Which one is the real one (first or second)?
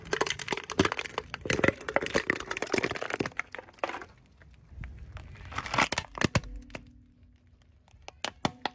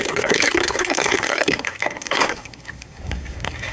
first